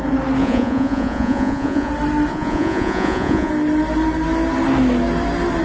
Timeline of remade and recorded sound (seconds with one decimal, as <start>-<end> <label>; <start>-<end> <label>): 0.0-0.4 recorded; 0.4-1.9 remade; 1.9-2.3 recorded; 2.3-3.5 remade; 3.5-5.6 recorded